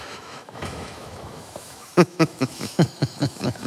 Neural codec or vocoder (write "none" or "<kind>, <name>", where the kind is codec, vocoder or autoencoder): autoencoder, DAC-VAE